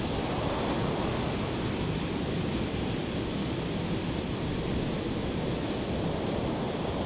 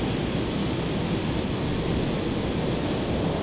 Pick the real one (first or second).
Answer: second